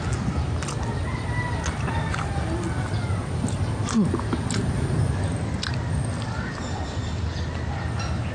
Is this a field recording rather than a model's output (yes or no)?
yes